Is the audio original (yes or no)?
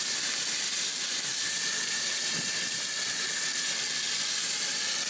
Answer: yes